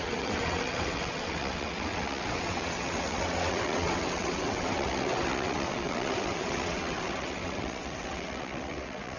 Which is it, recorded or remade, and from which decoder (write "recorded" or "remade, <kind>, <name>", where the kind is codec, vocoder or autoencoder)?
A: remade, vocoder, WaveNeXt